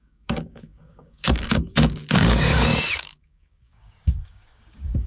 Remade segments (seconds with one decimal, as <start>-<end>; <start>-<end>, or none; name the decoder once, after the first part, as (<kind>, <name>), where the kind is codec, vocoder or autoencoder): 0.0-5.1 (codec, DAC)